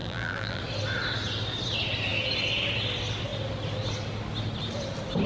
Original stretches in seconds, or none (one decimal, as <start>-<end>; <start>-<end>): 0.6-5.3